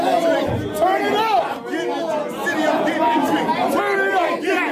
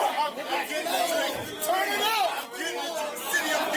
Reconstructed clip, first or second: second